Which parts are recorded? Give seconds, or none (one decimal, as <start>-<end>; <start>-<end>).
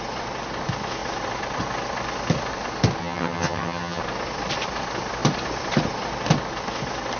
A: 0.0-3.0; 4.0-7.2